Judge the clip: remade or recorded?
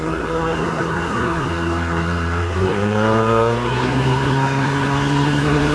remade